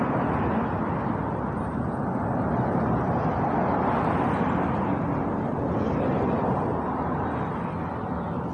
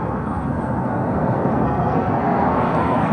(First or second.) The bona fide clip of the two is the first